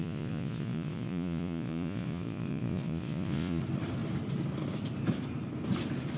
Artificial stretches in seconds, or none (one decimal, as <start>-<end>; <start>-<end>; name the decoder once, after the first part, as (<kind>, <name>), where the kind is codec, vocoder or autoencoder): 0.0-3.6 (vocoder, Vocos)